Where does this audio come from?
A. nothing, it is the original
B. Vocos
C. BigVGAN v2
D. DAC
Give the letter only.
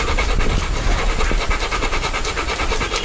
A